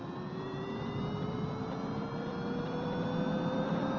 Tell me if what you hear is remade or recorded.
recorded